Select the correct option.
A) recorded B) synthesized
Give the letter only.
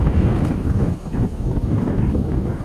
B